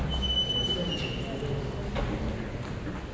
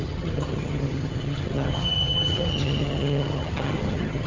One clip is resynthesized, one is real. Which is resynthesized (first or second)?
second